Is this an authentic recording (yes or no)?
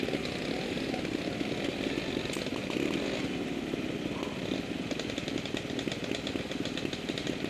yes